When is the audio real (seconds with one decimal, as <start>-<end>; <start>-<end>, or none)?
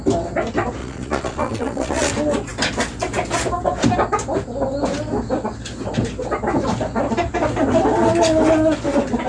0.0-0.8; 2.1-9.3